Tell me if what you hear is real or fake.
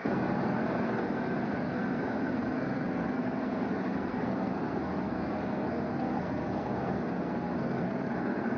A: fake